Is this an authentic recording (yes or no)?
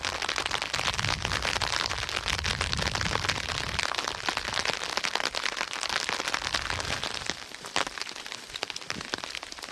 yes